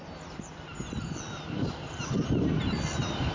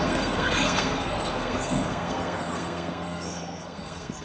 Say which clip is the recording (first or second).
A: first